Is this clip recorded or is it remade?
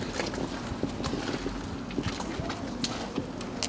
recorded